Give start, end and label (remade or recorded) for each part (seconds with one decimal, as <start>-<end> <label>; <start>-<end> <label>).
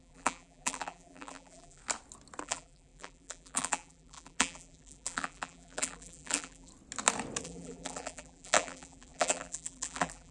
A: 0.0-1.8 remade; 1.8-2.4 recorded; 2.4-6.7 remade; 6.7-7.4 recorded; 7.4-10.3 remade